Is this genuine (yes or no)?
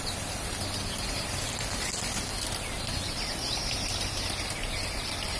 yes